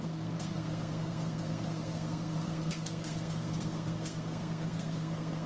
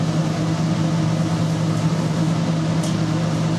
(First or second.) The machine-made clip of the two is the first